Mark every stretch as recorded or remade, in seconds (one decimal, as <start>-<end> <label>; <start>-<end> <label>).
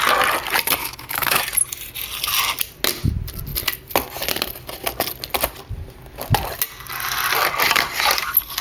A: 0.0-0.8 recorded; 0.8-1.4 remade; 1.4-8.6 recorded